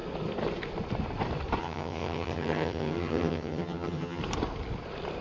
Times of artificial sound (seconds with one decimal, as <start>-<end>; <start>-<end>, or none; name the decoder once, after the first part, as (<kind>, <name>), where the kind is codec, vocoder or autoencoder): 1.6-4.2 (vocoder, HiFi-GAN)

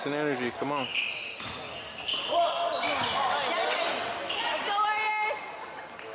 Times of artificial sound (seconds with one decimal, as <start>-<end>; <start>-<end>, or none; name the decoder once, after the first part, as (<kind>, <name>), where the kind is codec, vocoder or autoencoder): none

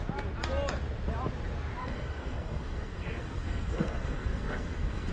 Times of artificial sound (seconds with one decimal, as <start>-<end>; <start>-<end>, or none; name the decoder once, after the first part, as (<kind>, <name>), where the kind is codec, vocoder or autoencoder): 1.8-5.1 (codec, SNAC)

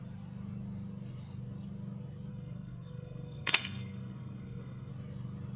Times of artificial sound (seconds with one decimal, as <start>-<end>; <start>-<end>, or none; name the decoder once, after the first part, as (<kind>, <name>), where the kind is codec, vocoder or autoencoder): 2.3-4.9 (codec, SNAC)

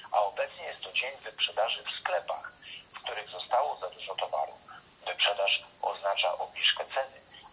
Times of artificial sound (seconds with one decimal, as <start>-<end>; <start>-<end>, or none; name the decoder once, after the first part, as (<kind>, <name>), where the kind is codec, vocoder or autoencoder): none